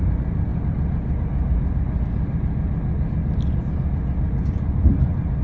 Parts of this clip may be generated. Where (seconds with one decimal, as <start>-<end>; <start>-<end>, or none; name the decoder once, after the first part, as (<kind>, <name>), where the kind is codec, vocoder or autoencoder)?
none